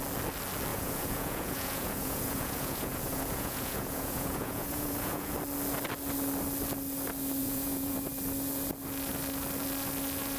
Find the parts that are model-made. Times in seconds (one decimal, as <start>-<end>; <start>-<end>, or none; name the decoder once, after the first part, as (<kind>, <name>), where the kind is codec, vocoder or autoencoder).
0.7-5.3 (vocoder, Vocos); 7.4-8.1